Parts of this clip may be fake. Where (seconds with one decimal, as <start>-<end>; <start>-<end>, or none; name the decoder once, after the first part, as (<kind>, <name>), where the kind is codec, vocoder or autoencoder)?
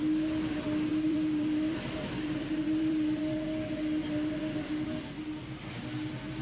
0.9-3.2 (vocoder, BigVGAN v2)